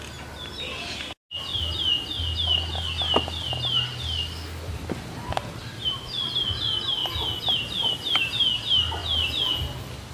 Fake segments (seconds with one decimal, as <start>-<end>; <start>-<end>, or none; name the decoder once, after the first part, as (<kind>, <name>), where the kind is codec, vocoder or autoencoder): none

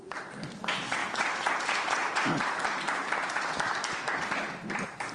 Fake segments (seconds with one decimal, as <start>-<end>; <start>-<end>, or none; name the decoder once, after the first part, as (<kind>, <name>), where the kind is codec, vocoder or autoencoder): 2.0-5.1 (vocoder, BigVGAN v2)

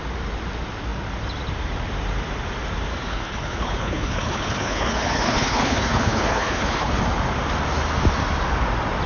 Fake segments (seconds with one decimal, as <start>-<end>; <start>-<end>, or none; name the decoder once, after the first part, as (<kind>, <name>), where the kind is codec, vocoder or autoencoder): 3.1-7.0 (codec, HILCodec)

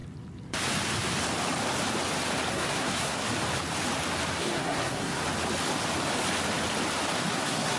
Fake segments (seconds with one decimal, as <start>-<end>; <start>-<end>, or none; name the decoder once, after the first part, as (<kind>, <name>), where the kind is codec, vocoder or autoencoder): 2.5-3.2 (codec, SNAC); 4.4-5.2; 7.3-7.8

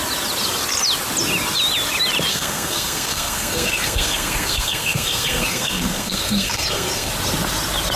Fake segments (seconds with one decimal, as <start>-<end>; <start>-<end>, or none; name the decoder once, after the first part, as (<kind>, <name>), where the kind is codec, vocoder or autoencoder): 2.3-7.1 (codec, SNAC)